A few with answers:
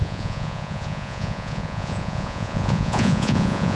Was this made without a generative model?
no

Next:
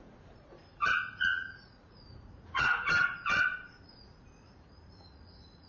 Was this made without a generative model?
no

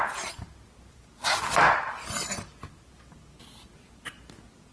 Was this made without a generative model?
yes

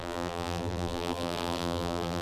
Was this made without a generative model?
no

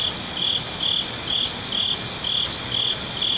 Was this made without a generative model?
yes